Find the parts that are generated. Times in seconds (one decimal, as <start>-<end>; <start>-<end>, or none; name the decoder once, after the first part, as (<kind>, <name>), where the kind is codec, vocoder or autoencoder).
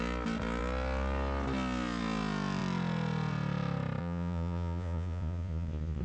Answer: 4.0-6.0 (vocoder, Vocos)